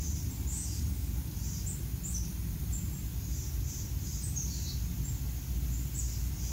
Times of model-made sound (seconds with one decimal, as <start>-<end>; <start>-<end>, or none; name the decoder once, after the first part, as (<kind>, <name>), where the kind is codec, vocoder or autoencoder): 0.5-1.1 (codec, DAC)